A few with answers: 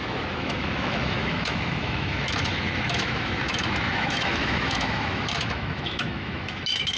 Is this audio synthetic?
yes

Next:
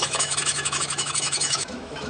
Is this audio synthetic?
yes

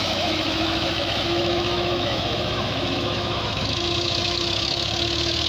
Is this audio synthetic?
yes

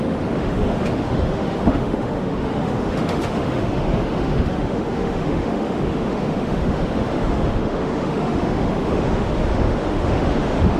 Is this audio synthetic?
yes